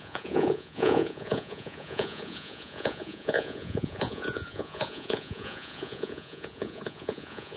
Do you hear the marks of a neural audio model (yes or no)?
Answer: yes